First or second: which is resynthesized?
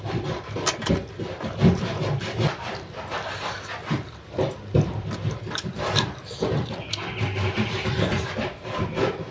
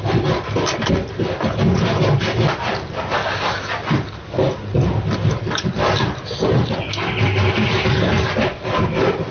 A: first